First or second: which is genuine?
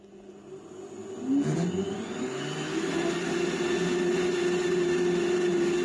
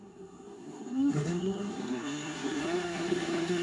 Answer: first